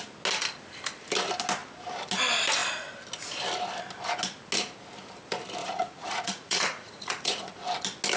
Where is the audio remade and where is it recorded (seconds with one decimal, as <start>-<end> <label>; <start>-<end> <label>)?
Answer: 0.0-5.6 recorded; 5.6-7.4 remade; 7.4-8.2 recorded